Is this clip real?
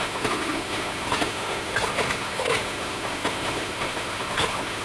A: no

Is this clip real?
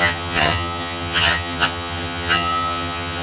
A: no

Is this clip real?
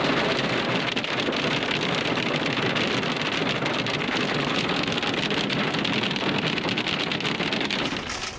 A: yes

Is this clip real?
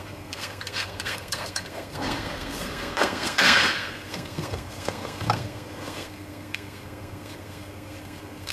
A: no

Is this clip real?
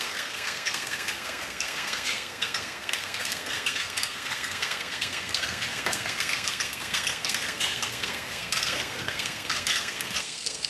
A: no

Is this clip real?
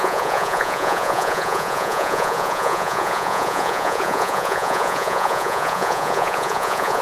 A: no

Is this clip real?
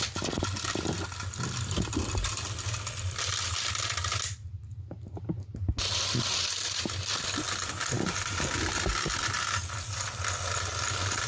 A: yes